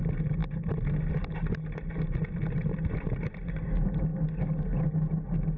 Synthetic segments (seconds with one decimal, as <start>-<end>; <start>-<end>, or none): none